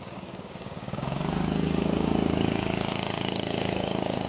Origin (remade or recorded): remade